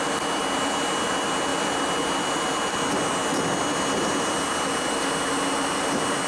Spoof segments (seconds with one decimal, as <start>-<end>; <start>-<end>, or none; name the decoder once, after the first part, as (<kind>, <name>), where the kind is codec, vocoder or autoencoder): none